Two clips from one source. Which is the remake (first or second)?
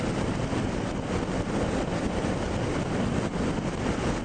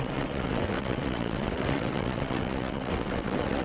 second